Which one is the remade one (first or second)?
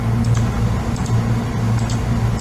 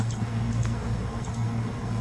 second